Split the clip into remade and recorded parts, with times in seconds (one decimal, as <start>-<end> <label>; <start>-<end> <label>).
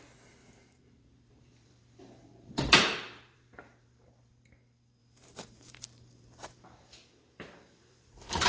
0.0-0.4 recorded; 0.4-4.3 remade; 4.3-5.0 recorded; 5.0-8.5 remade